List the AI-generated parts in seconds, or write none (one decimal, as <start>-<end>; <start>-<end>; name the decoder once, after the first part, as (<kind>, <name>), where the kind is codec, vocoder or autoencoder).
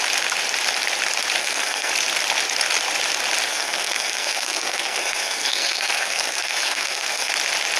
1.4-1.9 (codec, SNAC); 3.5-7.3